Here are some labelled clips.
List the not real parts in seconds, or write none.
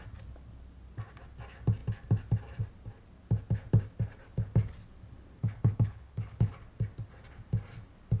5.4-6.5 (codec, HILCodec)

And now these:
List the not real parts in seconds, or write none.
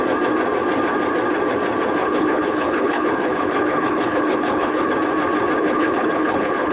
2.0-4.9 (codec, HILCodec); 5.6-6.7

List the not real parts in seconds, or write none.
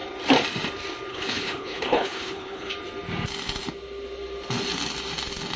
1.1-2.7 (codec, HILCodec)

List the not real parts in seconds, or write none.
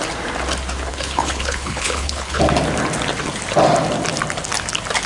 0.9-2.4 (codec, HILCodec)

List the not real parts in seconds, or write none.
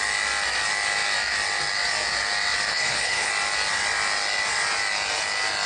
2.7-3.3 (codec, HILCodec)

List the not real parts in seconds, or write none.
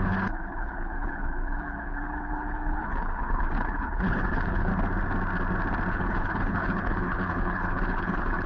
0.0-4.7 (codec, HILCodec); 5.9-8.5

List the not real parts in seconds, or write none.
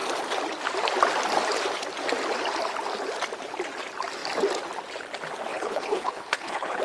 5.5-6.8 (codec, HILCodec)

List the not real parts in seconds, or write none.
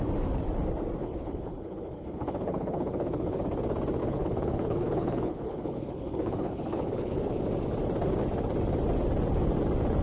1.0-3.4 (codec, HILCodec); 4.0-7.4